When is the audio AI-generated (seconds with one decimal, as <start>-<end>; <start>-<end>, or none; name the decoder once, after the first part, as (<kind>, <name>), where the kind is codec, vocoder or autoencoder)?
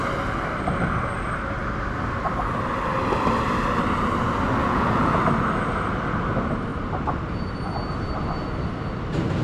4.6-5.2 (vocoder, Vocos)